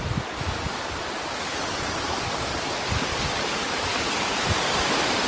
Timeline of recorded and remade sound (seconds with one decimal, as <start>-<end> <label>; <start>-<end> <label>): 0.0-5.3 recorded